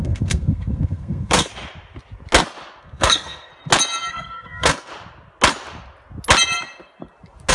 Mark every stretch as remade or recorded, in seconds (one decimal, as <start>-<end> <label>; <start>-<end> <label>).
0.0-1.5 remade; 1.5-2.8 recorded; 2.8-3.5 remade; 3.5-4.1 recorded; 4.1-4.9 remade; 4.9-7.5 recorded